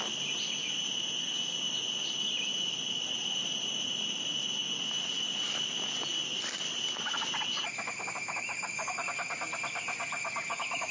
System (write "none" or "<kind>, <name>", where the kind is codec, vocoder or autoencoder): none